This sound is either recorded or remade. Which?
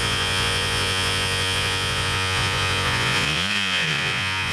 remade